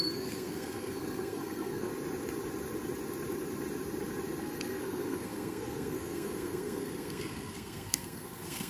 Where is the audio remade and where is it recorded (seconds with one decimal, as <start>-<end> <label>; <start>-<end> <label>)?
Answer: 0.0-1.9 remade; 1.9-4.4 recorded; 4.4-8.7 remade